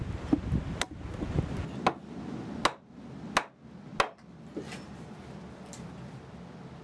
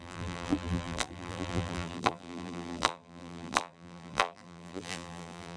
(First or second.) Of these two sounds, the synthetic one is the second